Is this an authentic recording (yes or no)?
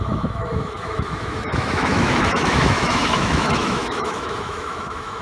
no